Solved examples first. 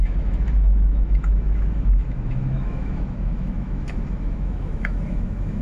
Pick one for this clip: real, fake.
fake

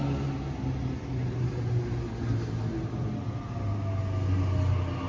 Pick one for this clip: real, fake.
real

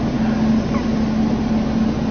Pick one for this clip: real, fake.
real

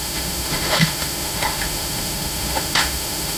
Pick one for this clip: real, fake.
fake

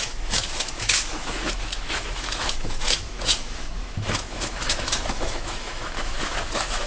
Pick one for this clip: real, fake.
fake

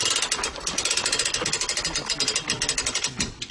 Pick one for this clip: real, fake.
real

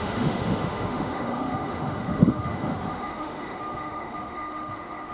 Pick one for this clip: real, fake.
fake